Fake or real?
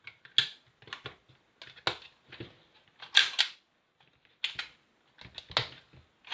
real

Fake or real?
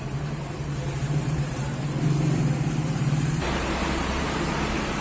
fake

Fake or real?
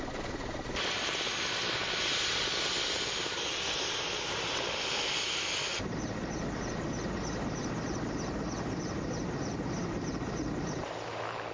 real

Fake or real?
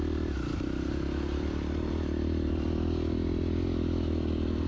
real